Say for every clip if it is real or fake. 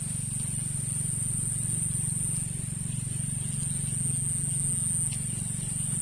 real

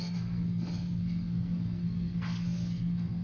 fake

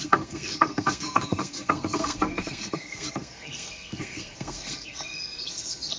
fake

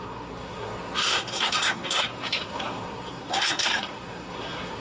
fake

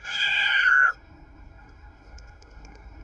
fake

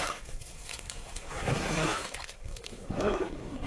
fake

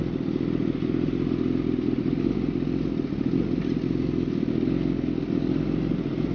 real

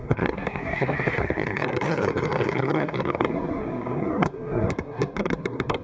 fake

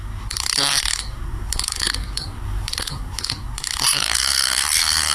fake